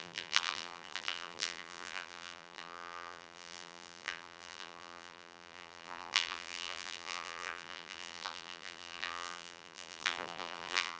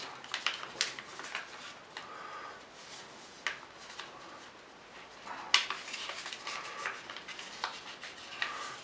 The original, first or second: second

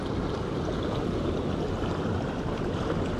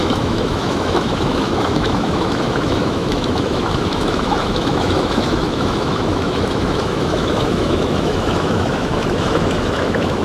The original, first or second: first